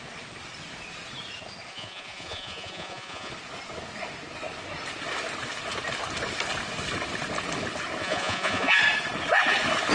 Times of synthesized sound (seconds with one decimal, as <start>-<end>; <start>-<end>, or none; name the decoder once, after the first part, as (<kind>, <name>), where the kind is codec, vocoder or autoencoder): 1.7-3.3 (vocoder, Vocos); 8.0-8.8